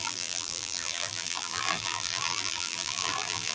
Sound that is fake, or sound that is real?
fake